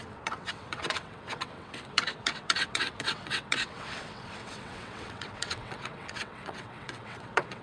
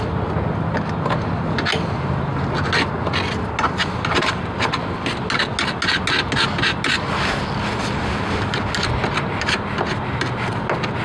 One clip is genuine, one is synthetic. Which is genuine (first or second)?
second